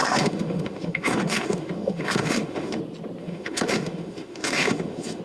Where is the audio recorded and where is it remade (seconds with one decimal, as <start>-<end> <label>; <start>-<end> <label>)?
0.0-2.8 remade; 2.8-3.2 recorded; 3.2-5.2 remade